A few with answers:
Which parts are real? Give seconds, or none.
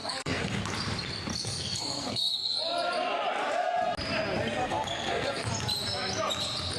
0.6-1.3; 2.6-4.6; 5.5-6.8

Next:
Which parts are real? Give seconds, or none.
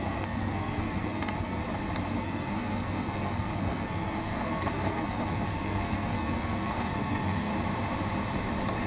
1.6-2.2; 7.5-8.9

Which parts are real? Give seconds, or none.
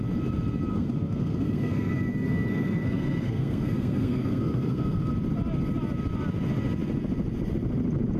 0.0-0.7; 5.1-8.2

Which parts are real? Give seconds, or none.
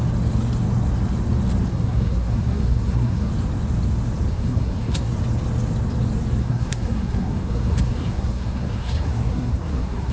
0.0-1.7; 3.3-4.3; 5.1-6.4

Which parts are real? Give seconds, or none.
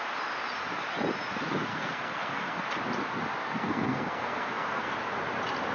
0.0-1.7; 2.6-3.4; 4.9-5.7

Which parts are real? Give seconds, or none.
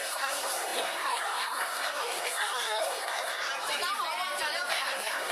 3.5-4.7